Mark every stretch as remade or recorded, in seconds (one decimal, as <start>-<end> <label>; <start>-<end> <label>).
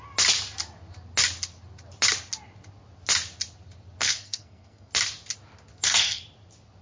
0.0-4.0 recorded; 4.0-4.9 remade; 4.9-5.7 recorded; 5.7-6.2 remade; 6.2-6.8 recorded